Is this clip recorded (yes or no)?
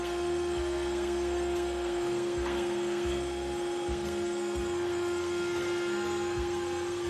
no